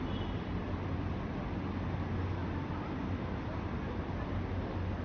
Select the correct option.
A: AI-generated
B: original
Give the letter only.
B